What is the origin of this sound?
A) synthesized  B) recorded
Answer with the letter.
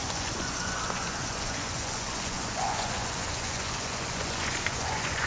A